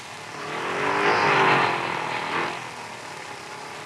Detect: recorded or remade recorded